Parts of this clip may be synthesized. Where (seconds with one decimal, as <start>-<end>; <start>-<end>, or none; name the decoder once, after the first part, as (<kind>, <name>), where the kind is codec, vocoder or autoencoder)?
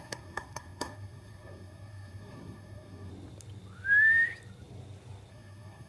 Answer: 0.0-3.1 (codec, SNAC); 5.3-5.9